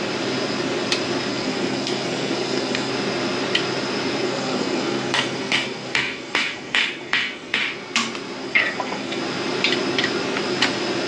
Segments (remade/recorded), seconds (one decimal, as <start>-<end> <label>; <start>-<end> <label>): 0.0-1.3 recorded; 1.3-2.9 remade; 2.9-4.2 recorded; 4.2-7.6 remade; 7.6-8.4 recorded; 8.4-9.2 remade; 9.2-11.1 recorded